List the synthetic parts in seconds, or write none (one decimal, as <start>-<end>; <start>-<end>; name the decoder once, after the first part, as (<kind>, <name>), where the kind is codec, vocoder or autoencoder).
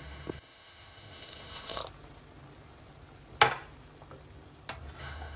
0.0-1.8 (autoencoder, DAC-VAE); 5.0-5.4